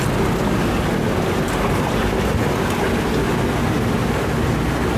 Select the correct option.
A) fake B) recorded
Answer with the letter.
B